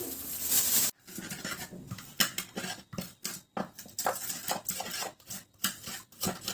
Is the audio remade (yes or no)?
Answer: no